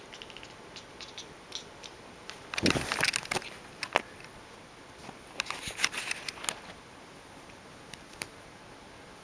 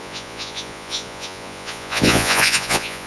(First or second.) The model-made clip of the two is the second